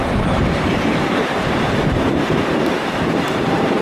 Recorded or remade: remade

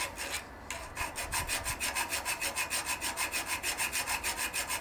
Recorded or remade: recorded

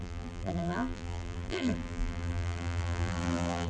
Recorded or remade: remade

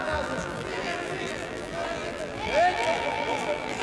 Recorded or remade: remade